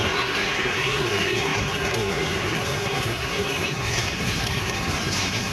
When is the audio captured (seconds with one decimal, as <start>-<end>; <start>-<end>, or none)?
none